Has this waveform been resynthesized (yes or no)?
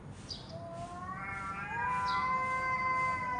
no